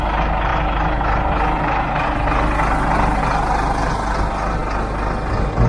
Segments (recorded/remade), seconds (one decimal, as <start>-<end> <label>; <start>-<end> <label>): 0.0-5.7 recorded